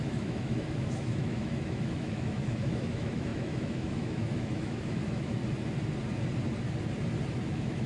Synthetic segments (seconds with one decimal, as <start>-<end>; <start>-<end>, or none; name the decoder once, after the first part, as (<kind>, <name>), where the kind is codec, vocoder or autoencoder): 0.0-5.4 (autoencoder, DAC-VAE); 7.5-7.9